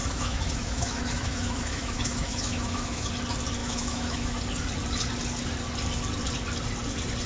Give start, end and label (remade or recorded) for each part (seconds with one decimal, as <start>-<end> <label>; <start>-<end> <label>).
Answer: 0.0-3.1 remade; 3.1-3.6 recorded; 3.6-4.4 remade; 4.4-7.3 recorded